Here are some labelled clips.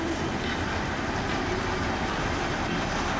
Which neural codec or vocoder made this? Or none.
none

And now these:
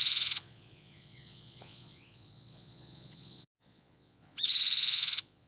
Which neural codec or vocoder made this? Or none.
vocoder, Vocos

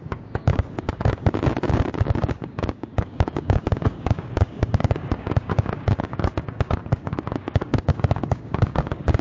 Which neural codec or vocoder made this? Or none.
codec, DAC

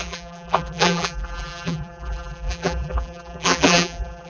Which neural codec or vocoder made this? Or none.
vocoder, BigVGAN v2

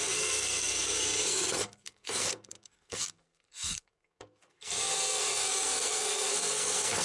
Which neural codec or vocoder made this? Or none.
codec, SNAC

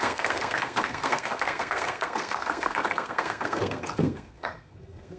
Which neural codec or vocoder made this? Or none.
codec, SNAC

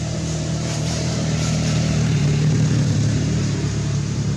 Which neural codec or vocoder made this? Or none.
vocoder, BigVGAN v2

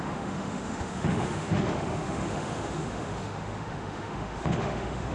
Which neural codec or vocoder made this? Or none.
autoencoder, DAC-VAE